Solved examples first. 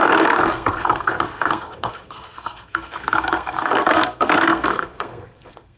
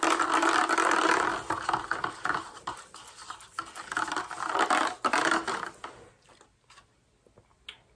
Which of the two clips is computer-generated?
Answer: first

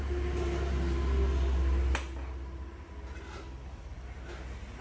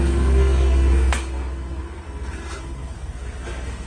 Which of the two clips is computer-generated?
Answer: second